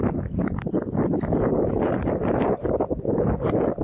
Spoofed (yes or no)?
no